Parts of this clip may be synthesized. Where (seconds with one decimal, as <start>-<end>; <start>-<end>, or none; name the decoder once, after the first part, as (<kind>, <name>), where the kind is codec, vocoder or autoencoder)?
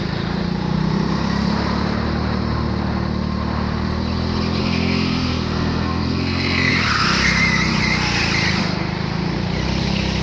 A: 4.6-6.7 (codec, SNAC)